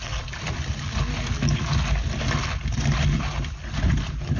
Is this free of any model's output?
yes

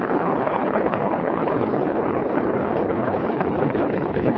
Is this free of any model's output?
no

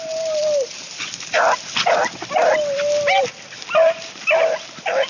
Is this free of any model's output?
yes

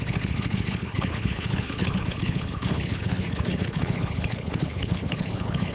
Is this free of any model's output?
no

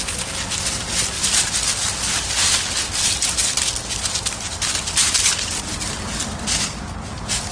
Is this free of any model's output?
yes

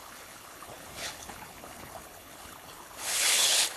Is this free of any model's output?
no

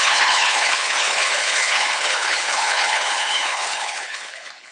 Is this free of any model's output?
no